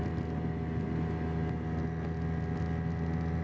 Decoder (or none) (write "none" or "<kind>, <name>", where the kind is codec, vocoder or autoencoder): none